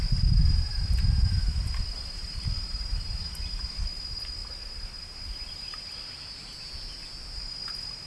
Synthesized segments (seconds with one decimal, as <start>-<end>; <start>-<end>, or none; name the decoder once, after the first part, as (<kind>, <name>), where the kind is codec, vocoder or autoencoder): none